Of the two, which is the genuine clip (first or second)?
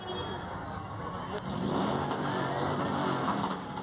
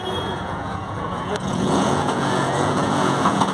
first